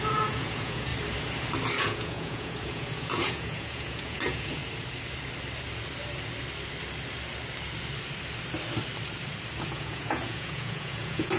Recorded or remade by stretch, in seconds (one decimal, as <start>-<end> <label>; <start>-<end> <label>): 0.0-0.9 remade; 0.9-1.8 recorded; 1.8-4.6 remade; 4.6-9.6 recorded; 9.6-11.4 remade